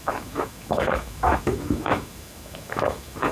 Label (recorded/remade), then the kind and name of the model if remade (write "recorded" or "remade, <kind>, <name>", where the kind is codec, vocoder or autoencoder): remade, autoencoder, DAC-VAE